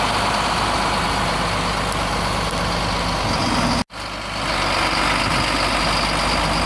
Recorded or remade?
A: recorded